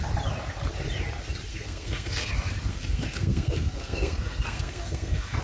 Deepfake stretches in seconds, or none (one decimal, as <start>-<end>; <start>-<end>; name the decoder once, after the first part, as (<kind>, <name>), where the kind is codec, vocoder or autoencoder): 1.5-2.3 (codec, SNAC); 2.7-5.4